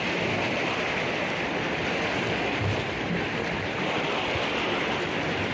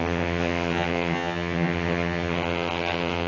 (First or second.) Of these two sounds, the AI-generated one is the second